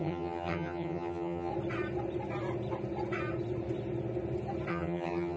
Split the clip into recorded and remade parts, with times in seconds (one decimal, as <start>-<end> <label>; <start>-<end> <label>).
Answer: 0.0-1.5 remade; 1.5-4.7 recorded; 4.7-5.4 remade